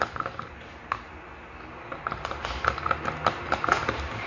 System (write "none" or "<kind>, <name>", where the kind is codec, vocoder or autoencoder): none